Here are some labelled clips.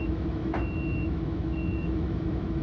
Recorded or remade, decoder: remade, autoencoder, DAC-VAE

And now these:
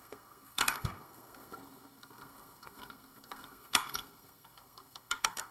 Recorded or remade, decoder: remade, codec, SNAC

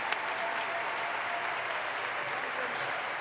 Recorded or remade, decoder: recorded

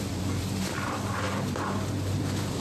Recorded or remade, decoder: remade, vocoder, BigVGAN v2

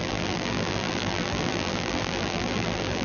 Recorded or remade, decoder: remade, vocoder, BigVGAN v2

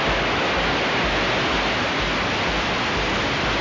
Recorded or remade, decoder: recorded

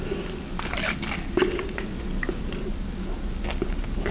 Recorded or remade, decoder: recorded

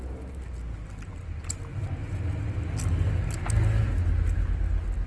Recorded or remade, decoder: recorded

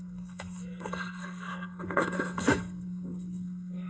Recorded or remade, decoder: remade, codec, SNAC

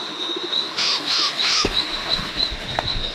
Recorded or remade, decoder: remade, autoencoder, DAC-VAE